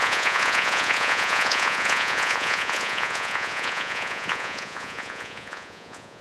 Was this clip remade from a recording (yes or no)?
yes